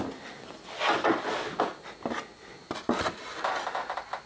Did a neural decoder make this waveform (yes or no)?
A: no